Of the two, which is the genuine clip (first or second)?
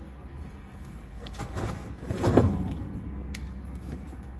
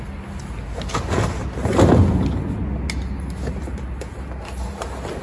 second